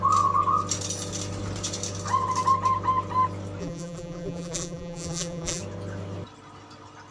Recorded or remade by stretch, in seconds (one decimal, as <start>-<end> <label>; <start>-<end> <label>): 0.0-3.6 recorded; 3.6-5.6 remade; 5.6-7.1 recorded